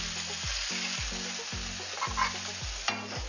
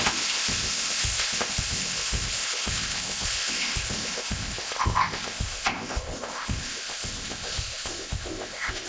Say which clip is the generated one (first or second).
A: second